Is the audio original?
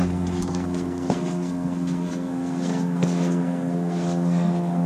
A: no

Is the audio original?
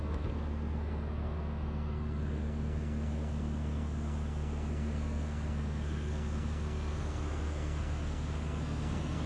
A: no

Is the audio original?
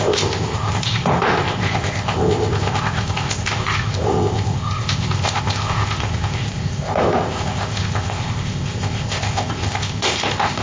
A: no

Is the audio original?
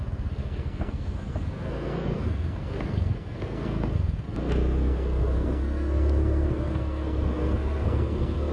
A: no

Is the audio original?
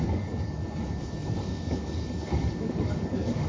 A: no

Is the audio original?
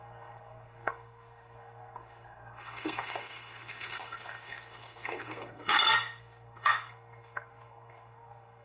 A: no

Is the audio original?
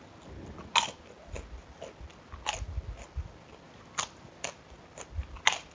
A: yes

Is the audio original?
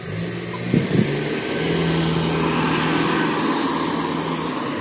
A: yes